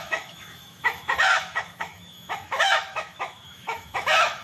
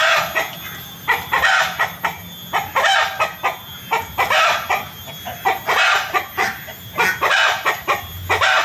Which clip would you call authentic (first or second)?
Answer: second